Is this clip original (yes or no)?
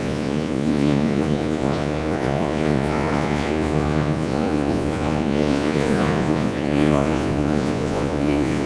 no